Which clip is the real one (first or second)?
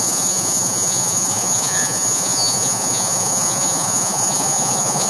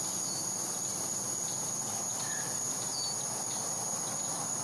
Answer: second